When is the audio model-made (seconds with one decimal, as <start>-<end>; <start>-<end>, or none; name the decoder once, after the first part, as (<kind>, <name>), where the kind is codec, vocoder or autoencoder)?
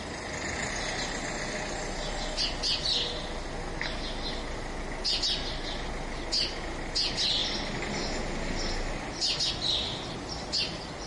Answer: none